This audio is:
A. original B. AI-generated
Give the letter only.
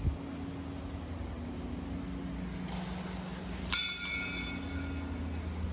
A